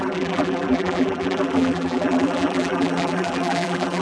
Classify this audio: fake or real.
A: fake